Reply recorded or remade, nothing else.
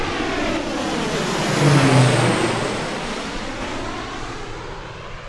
recorded